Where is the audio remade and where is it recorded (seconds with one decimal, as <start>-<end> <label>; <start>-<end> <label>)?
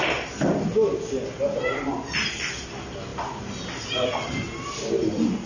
0.0-5.5 recorded